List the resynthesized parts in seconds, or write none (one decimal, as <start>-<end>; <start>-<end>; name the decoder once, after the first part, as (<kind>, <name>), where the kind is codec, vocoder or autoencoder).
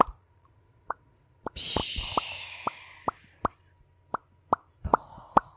0.0-1.8 (vocoder, Vocos); 4.7-5.6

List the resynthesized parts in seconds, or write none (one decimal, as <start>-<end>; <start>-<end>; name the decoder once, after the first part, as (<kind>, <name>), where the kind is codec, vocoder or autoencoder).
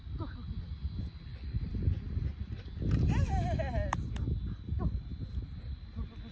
none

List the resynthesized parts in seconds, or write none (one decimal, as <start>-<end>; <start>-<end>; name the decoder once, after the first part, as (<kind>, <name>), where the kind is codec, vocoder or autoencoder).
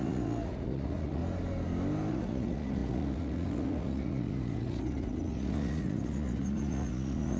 0.0-1.2 (vocoder, Vocos); 2.1-7.4